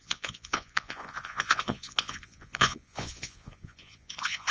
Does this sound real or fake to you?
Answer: fake